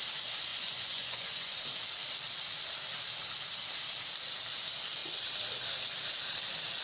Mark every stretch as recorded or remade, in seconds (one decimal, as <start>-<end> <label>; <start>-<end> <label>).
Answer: 0.0-0.5 recorded; 0.5-1.6 remade; 1.6-6.8 recorded

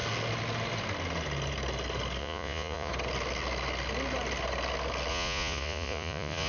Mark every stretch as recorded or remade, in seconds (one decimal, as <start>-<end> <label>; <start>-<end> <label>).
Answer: 0.0-2.2 recorded; 2.2-2.9 remade; 2.9-5.1 recorded; 5.1-6.5 remade